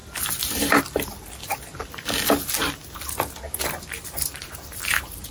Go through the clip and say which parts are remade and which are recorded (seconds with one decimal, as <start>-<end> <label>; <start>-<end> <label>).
0.0-0.8 remade; 0.8-5.3 recorded